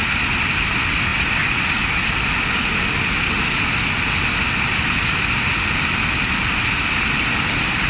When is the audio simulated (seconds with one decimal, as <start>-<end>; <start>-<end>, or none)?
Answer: none